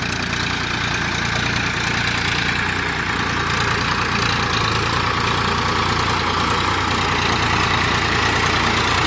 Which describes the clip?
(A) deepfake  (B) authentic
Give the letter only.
B